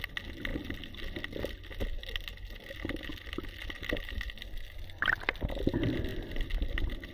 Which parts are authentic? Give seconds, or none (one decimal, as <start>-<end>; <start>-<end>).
0.0-7.1